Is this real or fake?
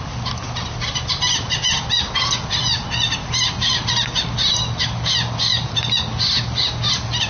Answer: real